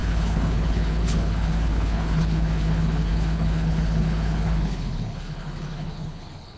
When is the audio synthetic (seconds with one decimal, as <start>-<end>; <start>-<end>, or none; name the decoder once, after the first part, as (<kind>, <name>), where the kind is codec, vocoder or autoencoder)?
0.0-6.6 (codec, HILCodec)